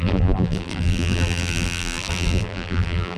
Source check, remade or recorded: remade